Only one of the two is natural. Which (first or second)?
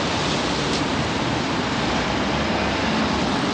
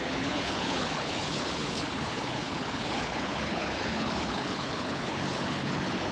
first